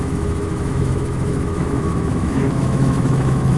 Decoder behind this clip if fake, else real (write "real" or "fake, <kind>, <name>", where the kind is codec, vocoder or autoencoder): fake, autoencoder, DAC-VAE